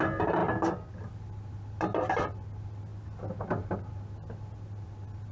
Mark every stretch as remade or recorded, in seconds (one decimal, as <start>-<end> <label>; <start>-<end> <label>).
0.0-5.3 recorded